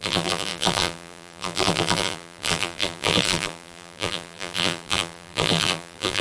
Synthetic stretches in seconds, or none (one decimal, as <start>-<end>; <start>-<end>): 0.0-6.2